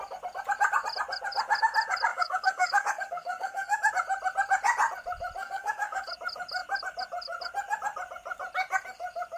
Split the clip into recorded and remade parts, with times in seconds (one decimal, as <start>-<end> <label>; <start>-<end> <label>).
0.0-2.1 recorded; 2.1-3.9 remade; 3.9-5.4 recorded; 5.4-6.1 remade; 6.1-9.4 recorded